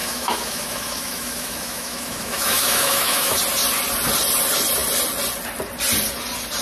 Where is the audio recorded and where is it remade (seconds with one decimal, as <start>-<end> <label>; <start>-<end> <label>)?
0.0-3.4 remade; 3.4-6.6 recorded